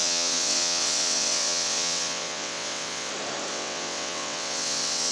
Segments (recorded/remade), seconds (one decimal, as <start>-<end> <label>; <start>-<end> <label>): 0.0-3.1 remade; 3.1-3.5 recorded; 3.5-5.1 remade